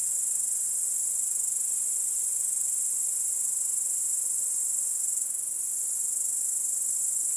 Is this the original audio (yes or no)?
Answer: yes